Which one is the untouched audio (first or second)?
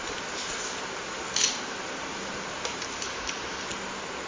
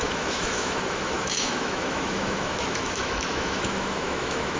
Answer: first